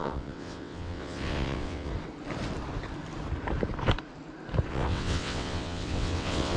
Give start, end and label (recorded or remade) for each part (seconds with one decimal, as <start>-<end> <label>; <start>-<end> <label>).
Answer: 0.0-1.9 remade; 1.9-4.7 recorded; 4.7-6.6 remade